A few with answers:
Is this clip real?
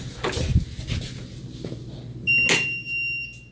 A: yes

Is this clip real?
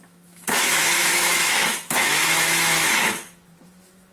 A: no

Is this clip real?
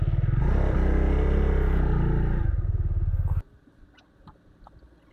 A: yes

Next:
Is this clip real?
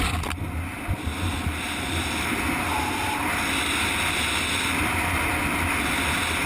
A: yes